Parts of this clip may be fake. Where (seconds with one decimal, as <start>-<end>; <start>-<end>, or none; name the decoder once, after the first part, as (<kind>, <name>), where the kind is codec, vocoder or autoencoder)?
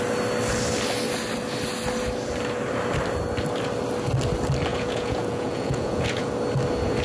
4.7-6.3 (vocoder, Vocos)